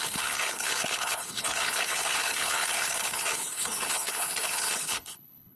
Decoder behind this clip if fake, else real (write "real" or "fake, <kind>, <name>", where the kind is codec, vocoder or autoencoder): fake, codec, HILCodec